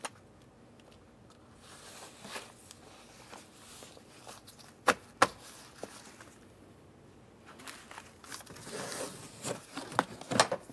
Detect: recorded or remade recorded